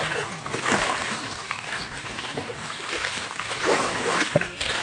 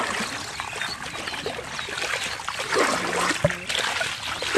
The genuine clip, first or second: second